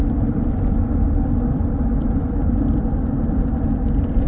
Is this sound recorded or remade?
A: remade